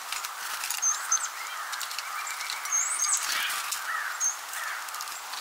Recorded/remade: recorded